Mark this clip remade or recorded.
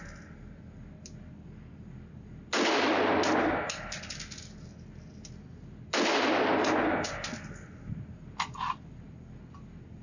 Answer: recorded